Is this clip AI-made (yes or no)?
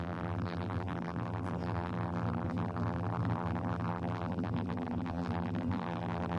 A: yes